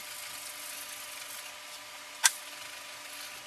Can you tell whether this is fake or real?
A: real